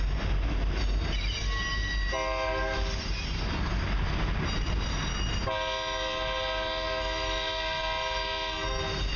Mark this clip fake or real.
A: real